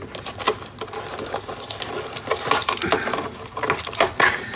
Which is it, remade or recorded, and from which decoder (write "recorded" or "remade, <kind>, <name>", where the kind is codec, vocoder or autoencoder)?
recorded